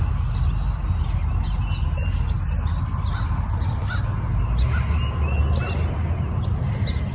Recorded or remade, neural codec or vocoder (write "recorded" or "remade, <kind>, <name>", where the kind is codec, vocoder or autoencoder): recorded